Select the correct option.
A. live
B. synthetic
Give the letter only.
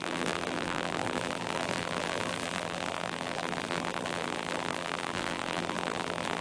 B